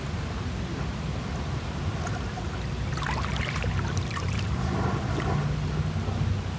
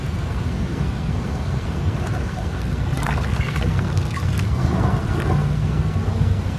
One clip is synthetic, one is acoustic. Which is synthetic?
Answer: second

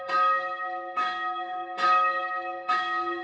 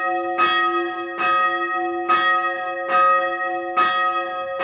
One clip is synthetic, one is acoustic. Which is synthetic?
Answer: first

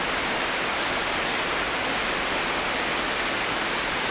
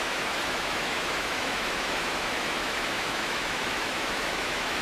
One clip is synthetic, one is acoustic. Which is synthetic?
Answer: second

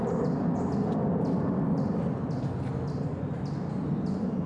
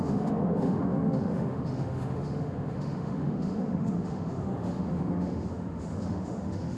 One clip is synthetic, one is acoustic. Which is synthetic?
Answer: second